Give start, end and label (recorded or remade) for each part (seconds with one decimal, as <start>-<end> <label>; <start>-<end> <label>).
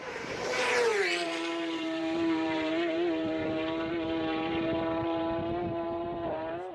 0.0-6.7 remade